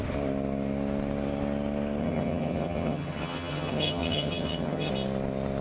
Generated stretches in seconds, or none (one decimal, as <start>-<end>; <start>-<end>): 2.0-4.9